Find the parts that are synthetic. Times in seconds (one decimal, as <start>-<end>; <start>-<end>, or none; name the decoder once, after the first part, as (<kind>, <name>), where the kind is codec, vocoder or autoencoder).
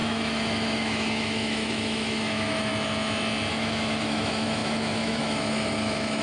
0.0-2.7 (autoencoder, DAC-VAE); 3.5-6.2